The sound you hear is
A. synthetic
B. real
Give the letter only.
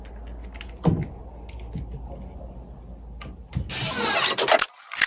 B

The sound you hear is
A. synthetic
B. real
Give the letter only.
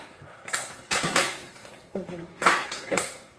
A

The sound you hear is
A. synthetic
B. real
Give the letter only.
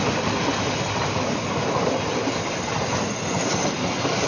B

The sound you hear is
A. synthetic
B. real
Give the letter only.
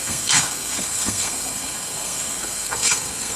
A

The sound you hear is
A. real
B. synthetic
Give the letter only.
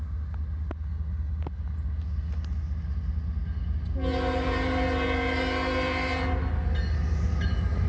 A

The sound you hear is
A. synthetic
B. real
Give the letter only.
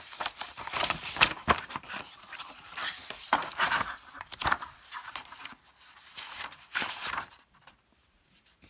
A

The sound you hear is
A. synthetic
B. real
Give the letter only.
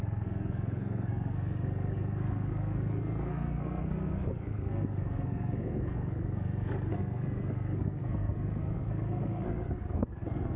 A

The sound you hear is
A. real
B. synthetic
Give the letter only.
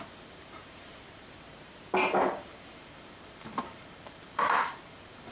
B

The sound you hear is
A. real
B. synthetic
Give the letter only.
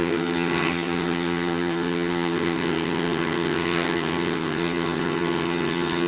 B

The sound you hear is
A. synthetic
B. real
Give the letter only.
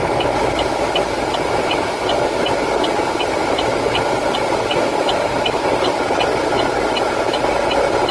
B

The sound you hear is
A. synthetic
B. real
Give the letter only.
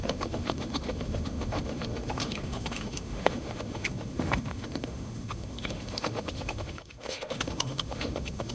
A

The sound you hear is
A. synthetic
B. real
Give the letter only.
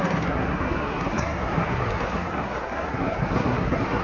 A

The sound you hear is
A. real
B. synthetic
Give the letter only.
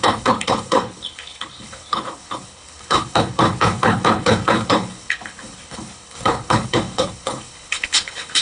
B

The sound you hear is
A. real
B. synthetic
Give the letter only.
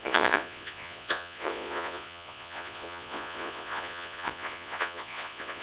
B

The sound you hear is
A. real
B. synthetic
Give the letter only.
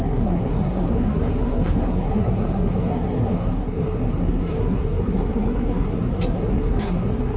B